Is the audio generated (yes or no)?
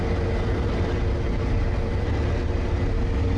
no